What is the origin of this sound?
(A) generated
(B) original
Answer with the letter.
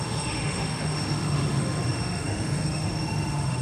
A